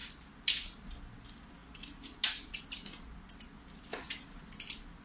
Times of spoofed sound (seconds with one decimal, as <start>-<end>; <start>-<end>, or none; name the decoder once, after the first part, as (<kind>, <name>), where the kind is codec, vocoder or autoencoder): none